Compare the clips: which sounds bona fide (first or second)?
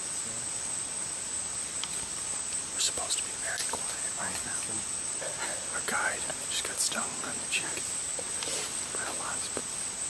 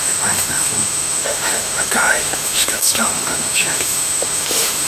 first